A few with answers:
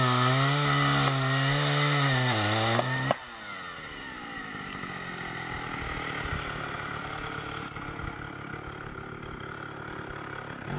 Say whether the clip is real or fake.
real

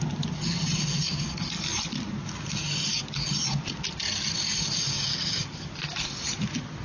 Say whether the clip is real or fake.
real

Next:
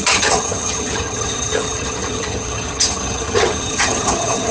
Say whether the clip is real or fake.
fake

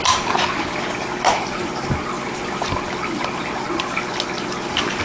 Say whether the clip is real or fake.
real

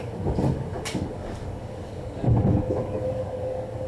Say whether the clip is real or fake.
fake